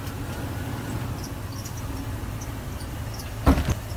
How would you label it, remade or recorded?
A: recorded